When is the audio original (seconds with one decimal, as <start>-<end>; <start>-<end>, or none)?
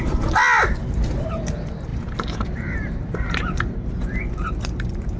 0.0-1.9